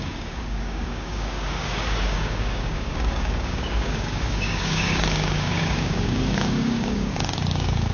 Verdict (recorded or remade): remade